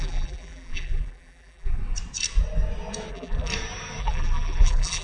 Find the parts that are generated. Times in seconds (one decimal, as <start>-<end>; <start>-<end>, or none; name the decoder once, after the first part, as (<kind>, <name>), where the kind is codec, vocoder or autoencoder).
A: 0.0-1.8 (vocoder, BigVGAN v2); 3.1-3.5; 4.0-5.0